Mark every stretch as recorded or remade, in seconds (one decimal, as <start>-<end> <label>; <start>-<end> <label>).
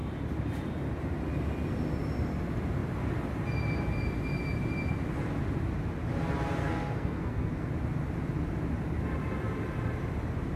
0.0-6.6 recorded; 6.6-7.7 remade; 7.7-10.6 recorded